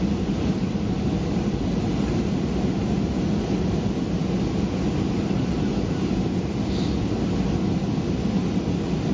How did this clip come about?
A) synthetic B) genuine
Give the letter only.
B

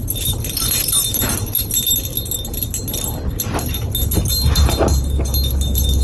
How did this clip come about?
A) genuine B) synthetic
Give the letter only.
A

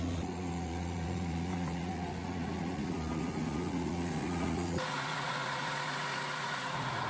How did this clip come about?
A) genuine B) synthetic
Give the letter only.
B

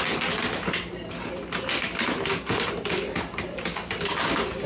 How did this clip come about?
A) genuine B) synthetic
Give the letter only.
A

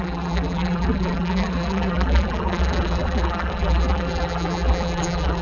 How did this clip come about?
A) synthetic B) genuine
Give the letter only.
A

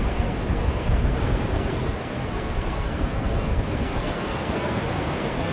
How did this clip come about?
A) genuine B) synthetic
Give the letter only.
B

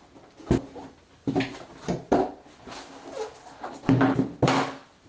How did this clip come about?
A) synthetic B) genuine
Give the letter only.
B